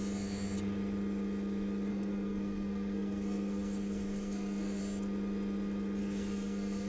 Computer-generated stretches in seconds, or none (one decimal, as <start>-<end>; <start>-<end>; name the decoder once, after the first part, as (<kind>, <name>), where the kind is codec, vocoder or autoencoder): 1.9-4.8 (codec, SNAC); 6.0-6.9